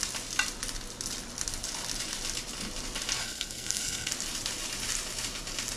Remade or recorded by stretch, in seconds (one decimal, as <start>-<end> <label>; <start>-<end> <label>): 0.0-3.2 recorded; 3.2-4.1 remade; 4.1-5.8 recorded